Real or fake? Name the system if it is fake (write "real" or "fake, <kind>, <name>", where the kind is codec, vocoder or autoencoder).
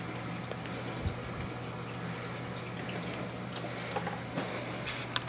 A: real